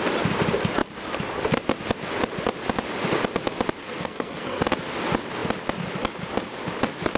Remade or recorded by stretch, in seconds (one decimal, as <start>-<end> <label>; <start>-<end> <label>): 0.0-3.8 recorded; 3.8-4.6 remade; 4.6-7.2 recorded